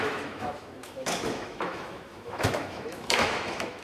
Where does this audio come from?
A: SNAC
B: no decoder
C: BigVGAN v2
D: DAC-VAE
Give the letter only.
D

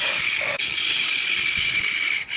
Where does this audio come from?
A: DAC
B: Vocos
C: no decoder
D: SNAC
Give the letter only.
A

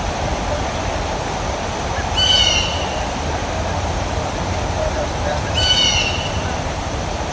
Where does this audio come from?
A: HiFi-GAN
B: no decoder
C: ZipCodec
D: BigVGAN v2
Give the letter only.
B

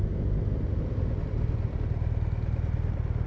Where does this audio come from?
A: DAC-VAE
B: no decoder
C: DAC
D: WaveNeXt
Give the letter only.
B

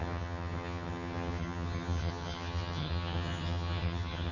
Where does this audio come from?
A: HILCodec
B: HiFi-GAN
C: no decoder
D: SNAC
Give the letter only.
B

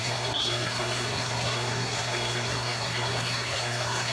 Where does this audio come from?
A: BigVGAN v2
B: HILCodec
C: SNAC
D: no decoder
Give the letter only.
C